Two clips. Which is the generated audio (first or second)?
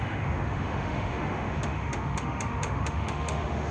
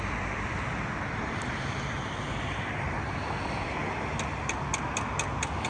first